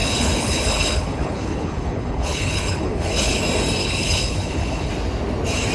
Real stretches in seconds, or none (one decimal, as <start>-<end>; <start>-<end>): 3.4-3.8; 4.9-5.7